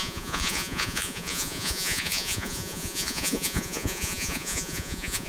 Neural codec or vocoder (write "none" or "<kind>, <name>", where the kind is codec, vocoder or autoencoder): vocoder, Vocos